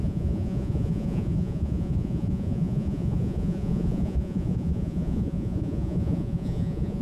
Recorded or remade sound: remade